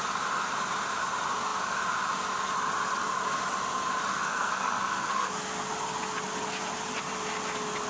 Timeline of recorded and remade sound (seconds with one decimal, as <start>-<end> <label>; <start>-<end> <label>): 0.0-4.1 recorded; 4.1-5.3 remade; 5.3-7.9 recorded